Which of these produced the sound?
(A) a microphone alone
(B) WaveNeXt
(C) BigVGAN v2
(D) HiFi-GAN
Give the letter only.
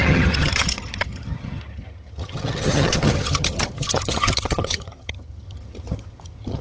D